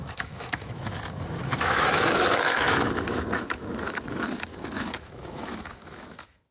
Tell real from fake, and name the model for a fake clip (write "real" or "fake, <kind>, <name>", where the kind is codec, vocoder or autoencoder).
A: fake, autoencoder, DAC-VAE